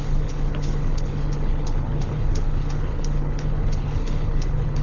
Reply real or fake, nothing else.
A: fake